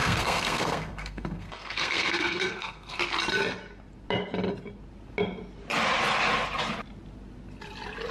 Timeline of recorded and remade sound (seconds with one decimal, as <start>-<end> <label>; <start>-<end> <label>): 0.0-3.0 remade; 3.0-8.1 recorded